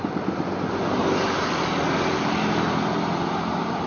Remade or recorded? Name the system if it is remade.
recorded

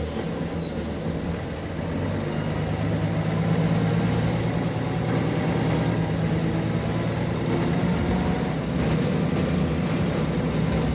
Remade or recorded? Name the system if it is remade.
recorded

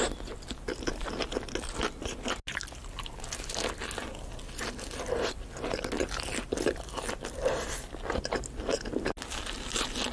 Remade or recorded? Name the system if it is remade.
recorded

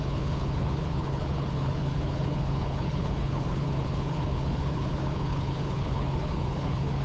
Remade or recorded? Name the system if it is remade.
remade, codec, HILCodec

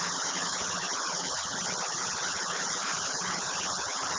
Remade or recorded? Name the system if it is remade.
remade, codec, HILCodec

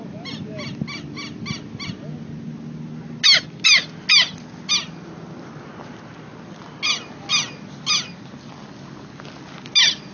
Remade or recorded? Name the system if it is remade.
recorded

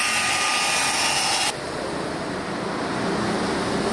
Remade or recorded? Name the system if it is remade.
recorded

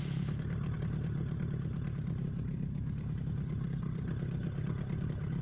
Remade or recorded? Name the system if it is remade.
recorded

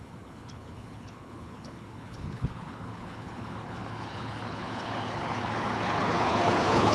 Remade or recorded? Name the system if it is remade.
remade, codec, HILCodec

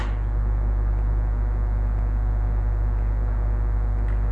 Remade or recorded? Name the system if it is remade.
recorded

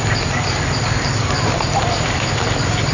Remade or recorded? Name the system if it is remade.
recorded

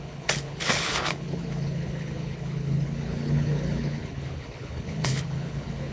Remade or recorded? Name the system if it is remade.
remade, codec, HILCodec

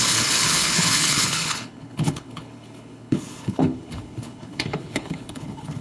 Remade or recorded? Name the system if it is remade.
remade, codec, HILCodec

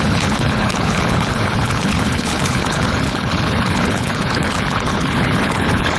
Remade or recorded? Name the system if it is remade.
remade, codec, HILCodec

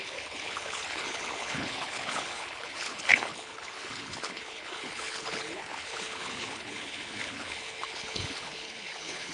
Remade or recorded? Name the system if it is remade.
remade, codec, HILCodec